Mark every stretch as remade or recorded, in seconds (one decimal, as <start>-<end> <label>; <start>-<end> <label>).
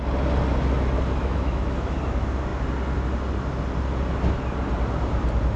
0.0-1.2 recorded; 1.2-2.0 remade; 2.0-5.6 recorded